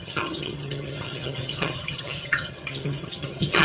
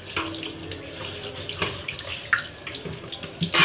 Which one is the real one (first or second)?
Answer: second